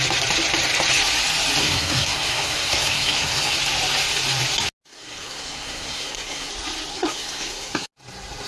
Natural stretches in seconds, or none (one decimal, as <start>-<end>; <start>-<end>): 0.0-1.6; 3.6-4.9; 6.5-6.9; 7.9-8.5